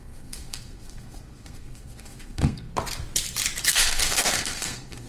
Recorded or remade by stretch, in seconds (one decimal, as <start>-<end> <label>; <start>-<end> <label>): 0.0-2.7 remade; 2.7-3.7 recorded; 3.7-5.1 remade